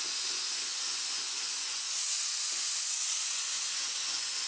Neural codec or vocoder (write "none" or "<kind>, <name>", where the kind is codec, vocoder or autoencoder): vocoder, Vocos